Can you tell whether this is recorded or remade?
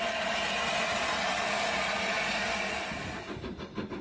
recorded